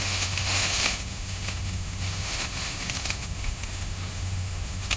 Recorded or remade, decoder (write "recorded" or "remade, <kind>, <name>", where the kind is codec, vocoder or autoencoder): remade, autoencoder, DAC-VAE